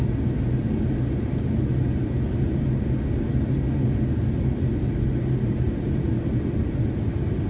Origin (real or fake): real